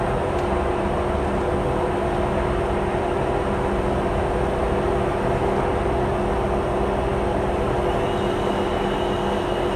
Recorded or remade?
recorded